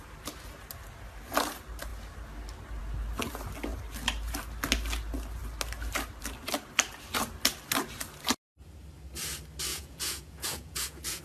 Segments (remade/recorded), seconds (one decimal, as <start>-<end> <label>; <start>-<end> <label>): 0.0-9.7 recorded; 9.7-11.2 remade